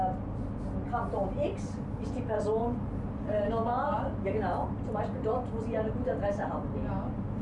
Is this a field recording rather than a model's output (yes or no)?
yes